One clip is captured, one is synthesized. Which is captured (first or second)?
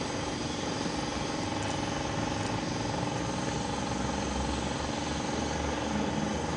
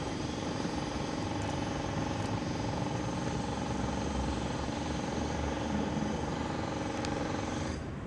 first